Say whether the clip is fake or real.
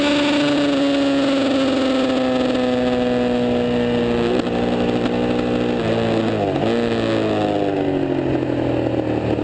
real